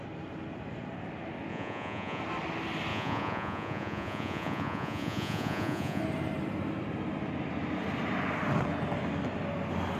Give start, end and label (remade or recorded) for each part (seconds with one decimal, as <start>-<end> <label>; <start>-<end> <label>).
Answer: 0.0-1.5 recorded; 1.5-2.2 remade; 2.2-2.9 recorded; 2.9-6.0 remade; 6.0-10.0 recorded